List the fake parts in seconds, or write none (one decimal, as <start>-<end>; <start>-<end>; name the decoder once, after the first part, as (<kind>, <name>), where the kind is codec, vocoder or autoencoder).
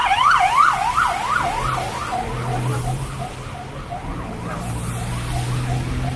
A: none